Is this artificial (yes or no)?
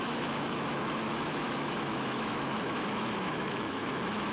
yes